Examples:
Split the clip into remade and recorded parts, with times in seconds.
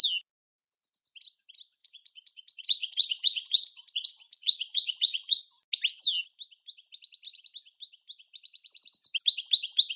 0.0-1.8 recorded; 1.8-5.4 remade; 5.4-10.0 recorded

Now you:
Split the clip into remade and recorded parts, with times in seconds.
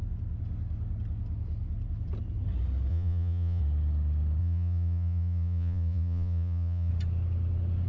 0.0-2.9 recorded; 2.9-3.6 remade; 3.6-4.4 recorded; 4.4-6.9 remade; 6.9-7.9 recorded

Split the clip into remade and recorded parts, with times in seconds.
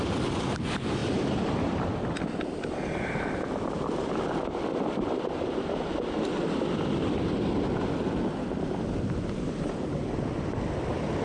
0.0-11.2 recorded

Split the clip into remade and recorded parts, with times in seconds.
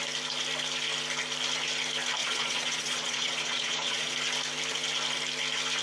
0.0-2.2 recorded; 2.2-4.1 remade; 4.1-5.8 recorded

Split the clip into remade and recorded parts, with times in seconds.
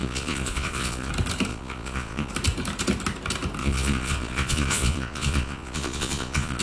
0.0-1.1 remade; 1.1-1.5 recorded; 1.5-2.3 remade; 2.3-3.6 recorded; 3.6-6.6 remade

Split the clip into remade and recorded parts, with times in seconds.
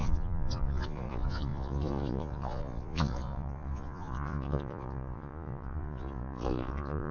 0.0-7.1 remade